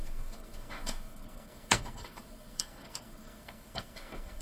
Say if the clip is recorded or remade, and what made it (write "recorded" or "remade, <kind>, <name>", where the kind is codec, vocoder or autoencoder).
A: remade, codec, SNAC